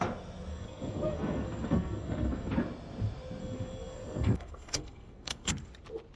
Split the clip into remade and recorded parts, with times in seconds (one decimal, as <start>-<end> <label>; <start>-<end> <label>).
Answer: 0.0-0.5 recorded; 0.5-2.5 remade; 2.5-3.4 recorded; 3.4-5.5 remade; 5.5-6.2 recorded